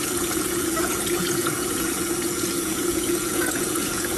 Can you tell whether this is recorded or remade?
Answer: remade